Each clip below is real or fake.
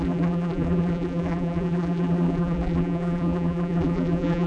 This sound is fake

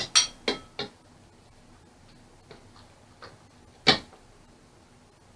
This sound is real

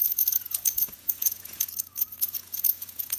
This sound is fake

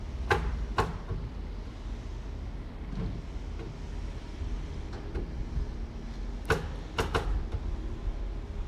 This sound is real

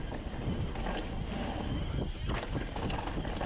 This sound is real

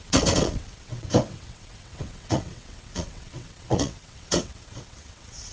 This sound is fake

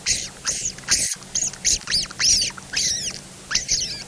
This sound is real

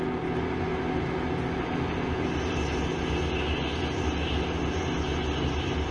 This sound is real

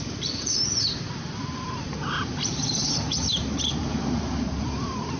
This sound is fake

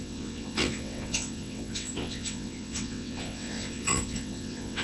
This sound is fake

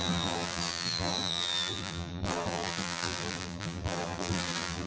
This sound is fake